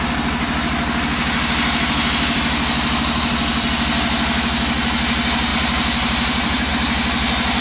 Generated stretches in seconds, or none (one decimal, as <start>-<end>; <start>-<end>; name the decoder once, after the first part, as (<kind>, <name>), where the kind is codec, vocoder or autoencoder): 5.5-6.7 (vocoder, BigVGAN v2)